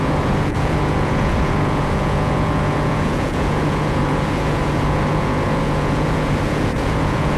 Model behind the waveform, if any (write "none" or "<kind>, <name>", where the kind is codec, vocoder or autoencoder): vocoder, Vocos